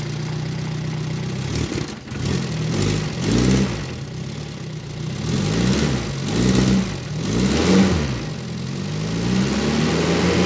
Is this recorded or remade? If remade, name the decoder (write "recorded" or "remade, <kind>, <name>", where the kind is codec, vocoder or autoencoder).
recorded